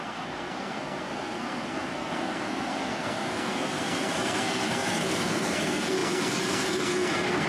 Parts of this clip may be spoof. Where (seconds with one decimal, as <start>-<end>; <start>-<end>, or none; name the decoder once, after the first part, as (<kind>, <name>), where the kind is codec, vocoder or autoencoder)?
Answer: 0.0-7.5 (codec, SNAC)